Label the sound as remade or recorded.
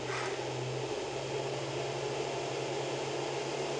recorded